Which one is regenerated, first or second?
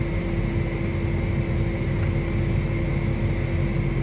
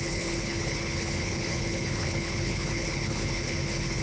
second